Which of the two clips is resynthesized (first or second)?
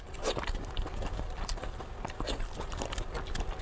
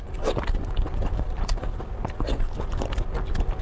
first